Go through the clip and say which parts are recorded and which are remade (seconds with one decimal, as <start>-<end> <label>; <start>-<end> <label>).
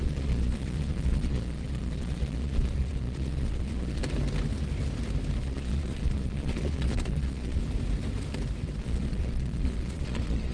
0.0-4.0 remade; 4.0-5.4 recorded; 5.4-7.6 remade; 7.6-8.8 recorded; 8.8-10.5 remade